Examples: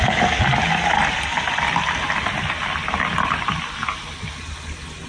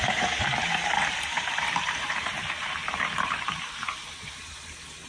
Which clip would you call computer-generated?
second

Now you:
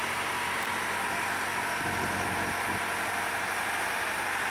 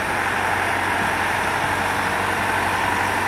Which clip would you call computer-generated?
second